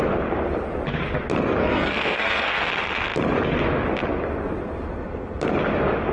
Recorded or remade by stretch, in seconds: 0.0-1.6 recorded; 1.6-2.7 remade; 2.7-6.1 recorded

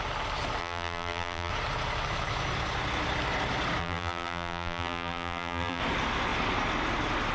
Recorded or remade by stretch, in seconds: 0.0-0.6 recorded; 0.6-1.5 remade; 1.5-3.8 recorded; 3.8-5.8 remade; 5.8-7.3 recorded

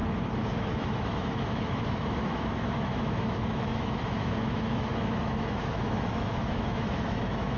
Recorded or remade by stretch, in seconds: 0.0-7.6 remade

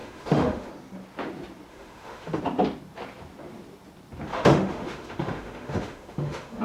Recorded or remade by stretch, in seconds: 0.0-0.7 remade; 0.7-1.7 recorded; 1.7-2.4 remade; 2.4-4.3 recorded; 4.3-6.6 remade

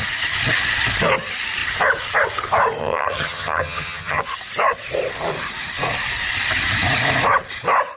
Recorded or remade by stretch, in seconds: 0.0-2.8 recorded; 2.8-4.2 remade; 4.2-8.0 recorded